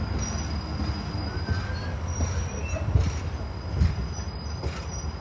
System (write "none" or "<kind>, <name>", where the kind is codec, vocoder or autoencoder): none